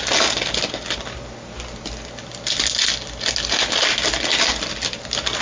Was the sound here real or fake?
real